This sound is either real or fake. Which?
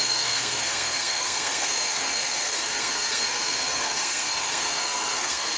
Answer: fake